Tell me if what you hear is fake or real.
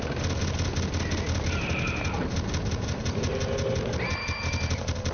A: real